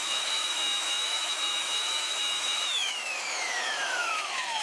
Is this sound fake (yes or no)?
yes